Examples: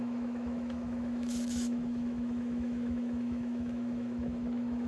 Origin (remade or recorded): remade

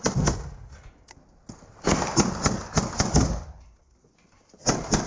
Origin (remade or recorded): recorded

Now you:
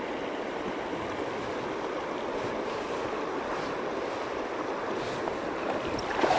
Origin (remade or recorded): recorded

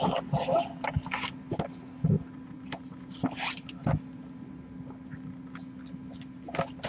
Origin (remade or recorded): recorded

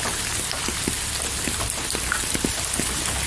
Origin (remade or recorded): recorded